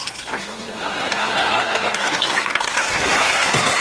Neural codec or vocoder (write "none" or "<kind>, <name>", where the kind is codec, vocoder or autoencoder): codec, SNAC